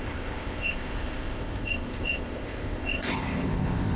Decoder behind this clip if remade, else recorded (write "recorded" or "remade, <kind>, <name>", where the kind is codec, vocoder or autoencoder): remade, codec, ZipCodec